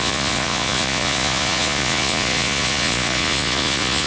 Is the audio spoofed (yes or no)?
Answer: yes